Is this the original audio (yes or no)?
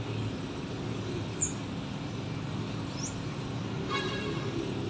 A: yes